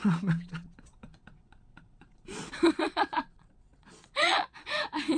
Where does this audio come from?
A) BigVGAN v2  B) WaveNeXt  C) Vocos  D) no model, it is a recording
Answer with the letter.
C